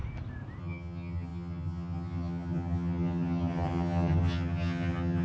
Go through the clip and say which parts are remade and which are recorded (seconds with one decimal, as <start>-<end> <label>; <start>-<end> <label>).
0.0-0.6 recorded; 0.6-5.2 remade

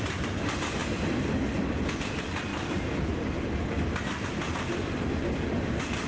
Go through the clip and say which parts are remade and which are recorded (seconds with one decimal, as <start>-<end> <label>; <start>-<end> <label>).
0.0-6.1 recorded

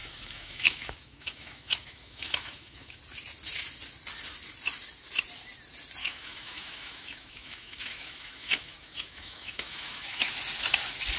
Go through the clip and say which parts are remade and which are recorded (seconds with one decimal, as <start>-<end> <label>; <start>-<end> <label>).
0.0-3.0 remade; 3.0-6.0 recorded; 6.0-10.3 remade; 10.3-11.2 recorded

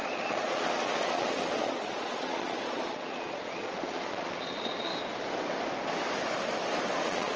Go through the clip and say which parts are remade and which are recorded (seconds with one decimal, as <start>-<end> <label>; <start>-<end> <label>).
0.0-4.9 remade; 4.9-7.0 recorded; 7.0-7.4 remade

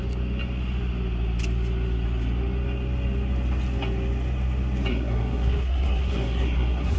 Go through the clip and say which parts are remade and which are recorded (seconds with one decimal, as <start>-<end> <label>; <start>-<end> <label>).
0.0-4.9 recorded; 4.9-7.0 remade

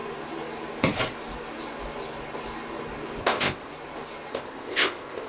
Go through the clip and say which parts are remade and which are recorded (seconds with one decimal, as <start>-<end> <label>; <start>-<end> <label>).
0.0-3.2 recorded; 3.2-3.7 remade; 3.7-4.3 recorded; 4.3-5.3 remade

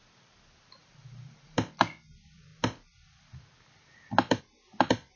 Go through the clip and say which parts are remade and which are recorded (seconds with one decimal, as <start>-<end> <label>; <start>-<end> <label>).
0.0-0.8 recorded; 0.8-1.7 remade; 1.7-5.2 recorded

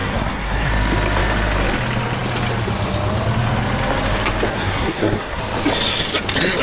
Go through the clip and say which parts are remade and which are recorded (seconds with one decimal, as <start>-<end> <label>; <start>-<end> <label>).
0.0-0.7 remade; 0.7-4.5 recorded; 4.5-5.4 remade; 5.4-6.6 recorded